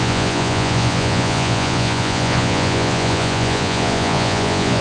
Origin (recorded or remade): remade